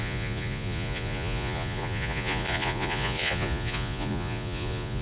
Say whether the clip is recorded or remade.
remade